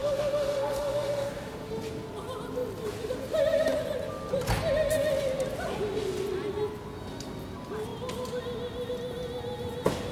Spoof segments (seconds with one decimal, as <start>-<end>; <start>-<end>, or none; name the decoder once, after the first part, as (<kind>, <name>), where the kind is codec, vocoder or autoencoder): 0.0-1.7 (autoencoder, DAC-VAE)